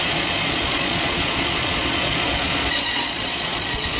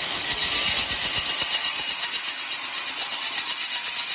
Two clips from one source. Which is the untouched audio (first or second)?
second